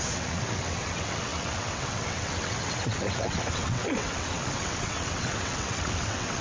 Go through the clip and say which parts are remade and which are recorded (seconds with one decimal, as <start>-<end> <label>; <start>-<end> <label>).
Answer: 0.0-6.4 remade